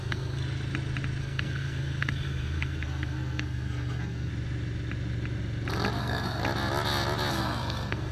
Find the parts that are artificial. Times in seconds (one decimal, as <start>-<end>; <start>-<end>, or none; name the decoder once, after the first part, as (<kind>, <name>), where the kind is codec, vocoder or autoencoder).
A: 0.0-0.4 (codec, SNAC); 1.2-4.3; 6.0-6.4; 7.3-8.1